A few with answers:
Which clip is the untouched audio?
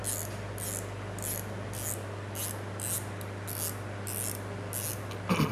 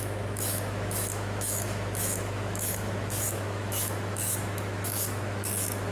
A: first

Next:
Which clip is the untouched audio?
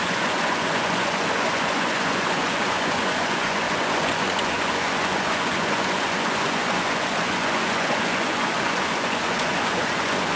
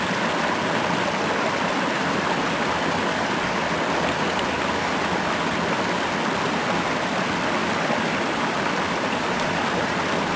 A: second